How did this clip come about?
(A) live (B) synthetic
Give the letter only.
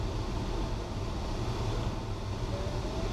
A